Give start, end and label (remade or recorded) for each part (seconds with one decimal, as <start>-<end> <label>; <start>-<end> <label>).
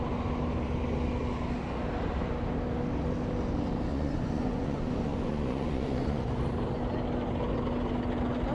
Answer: 0.0-3.9 recorded; 3.9-6.3 remade; 6.3-8.5 recorded